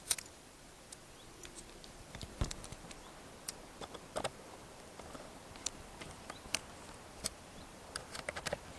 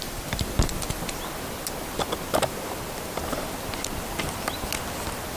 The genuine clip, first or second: second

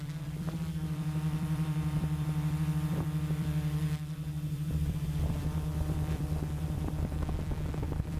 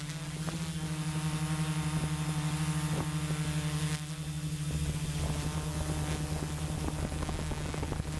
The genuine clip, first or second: second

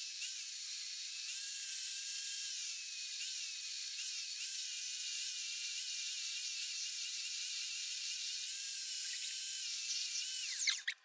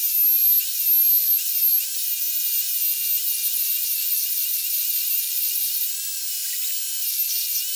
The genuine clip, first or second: second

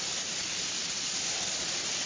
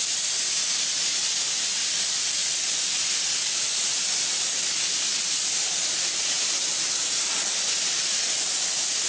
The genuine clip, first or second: second